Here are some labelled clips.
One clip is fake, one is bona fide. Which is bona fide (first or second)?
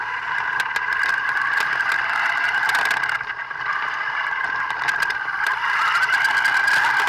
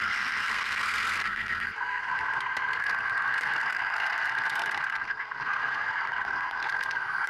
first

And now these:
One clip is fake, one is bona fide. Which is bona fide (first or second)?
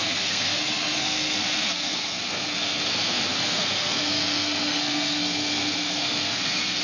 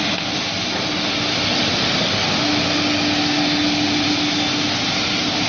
second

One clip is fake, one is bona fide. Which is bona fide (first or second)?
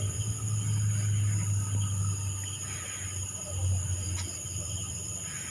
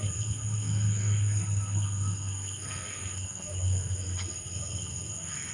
first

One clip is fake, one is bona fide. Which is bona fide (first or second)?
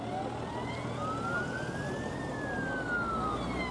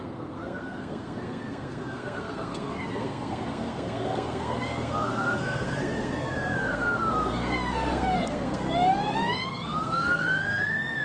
first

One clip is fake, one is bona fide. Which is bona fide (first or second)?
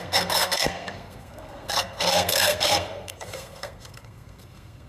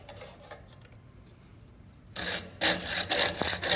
second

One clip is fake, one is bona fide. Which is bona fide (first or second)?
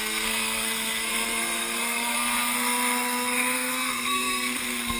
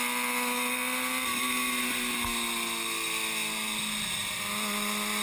second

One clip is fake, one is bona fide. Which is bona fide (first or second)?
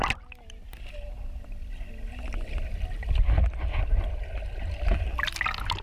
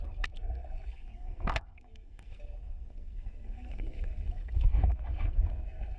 first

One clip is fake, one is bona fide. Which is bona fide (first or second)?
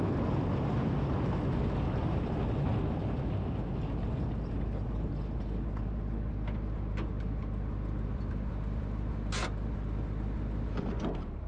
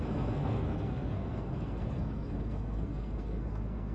first